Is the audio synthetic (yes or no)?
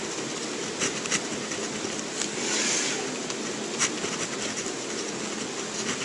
no